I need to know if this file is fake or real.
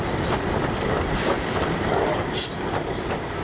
real